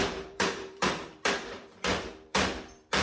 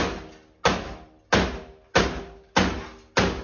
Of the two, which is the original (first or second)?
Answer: second